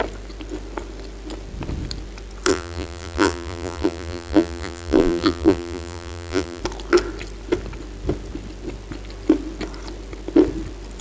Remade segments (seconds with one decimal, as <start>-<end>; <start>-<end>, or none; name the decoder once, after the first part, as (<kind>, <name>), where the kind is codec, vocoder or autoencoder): 2.5-6.6 (vocoder, BigVGAN v2)